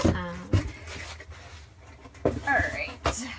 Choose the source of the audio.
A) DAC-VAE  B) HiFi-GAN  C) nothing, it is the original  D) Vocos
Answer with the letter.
C